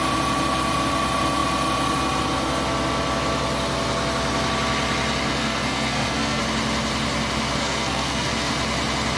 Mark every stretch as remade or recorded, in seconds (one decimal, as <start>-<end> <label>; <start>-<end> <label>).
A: 0.0-5.3 recorded; 5.3-6.4 remade; 6.4-7.6 recorded; 7.6-8.5 remade; 8.5-9.2 recorded